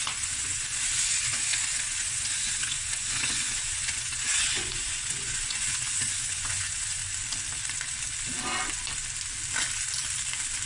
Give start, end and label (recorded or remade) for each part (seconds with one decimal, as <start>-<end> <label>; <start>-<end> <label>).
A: 0.0-7.0 remade; 7.0-10.7 recorded